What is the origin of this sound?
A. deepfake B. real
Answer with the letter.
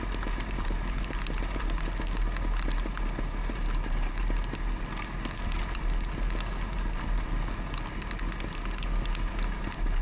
B